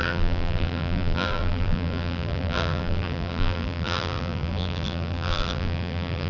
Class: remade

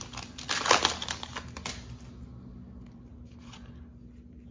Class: recorded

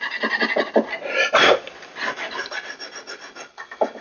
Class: recorded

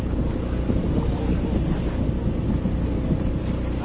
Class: recorded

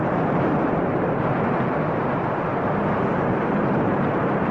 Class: remade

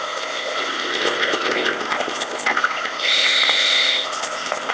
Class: remade